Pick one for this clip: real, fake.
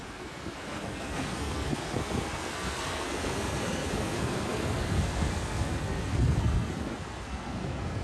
fake